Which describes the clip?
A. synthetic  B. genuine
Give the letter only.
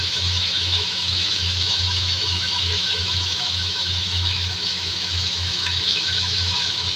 A